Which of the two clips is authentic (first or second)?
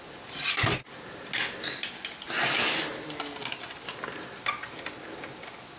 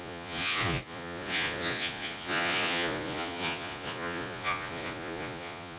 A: first